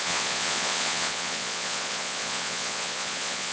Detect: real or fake fake